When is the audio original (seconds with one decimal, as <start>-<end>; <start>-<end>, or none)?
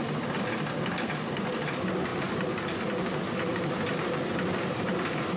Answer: 0.0-5.4